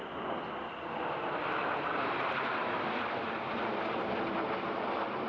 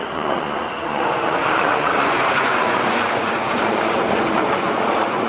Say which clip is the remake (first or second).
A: second